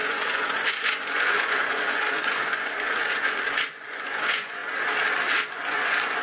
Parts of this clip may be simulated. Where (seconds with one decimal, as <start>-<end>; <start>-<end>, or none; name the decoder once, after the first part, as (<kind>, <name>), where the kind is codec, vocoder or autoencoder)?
0.0-4.6 (vocoder, Vocos); 5.5-6.2